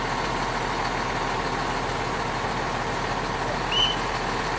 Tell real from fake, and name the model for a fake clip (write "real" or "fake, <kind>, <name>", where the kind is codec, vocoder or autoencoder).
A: real